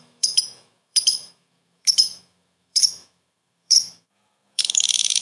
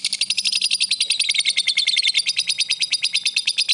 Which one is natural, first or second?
second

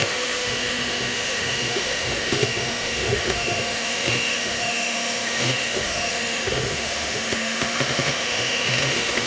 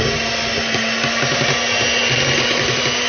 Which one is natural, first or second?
second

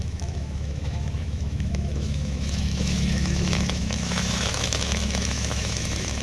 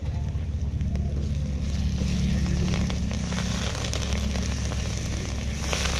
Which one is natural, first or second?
second